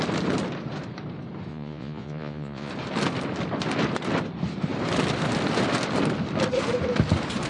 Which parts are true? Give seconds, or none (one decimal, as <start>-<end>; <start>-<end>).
0.0-1.5; 2.7-7.5